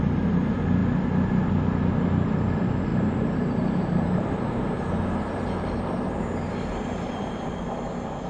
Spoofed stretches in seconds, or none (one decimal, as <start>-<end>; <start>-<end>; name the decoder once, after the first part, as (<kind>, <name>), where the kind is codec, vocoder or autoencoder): 2.9-7.5 (vocoder, BigVGAN v2)